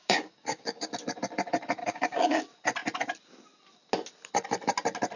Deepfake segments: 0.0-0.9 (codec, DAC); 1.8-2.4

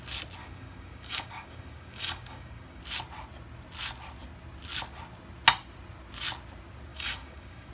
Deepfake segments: 0.4-2.8 (codec, DAC); 6.9-7.7

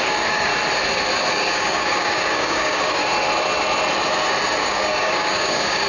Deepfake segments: 0.0-0.5 (codec, DAC); 1.3-3.0; 4.6-5.9

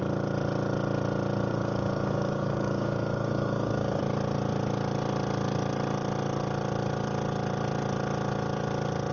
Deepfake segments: 1.5-4.0 (codec, DAC)

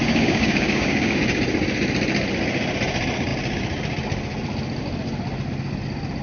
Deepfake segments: 0.0-1.2 (codec, DAC)

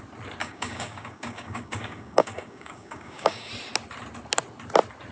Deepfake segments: 0.4-3.5 (codec, DAC)

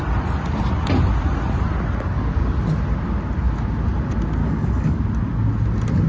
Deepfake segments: 4.4-5.0 (codec, DAC)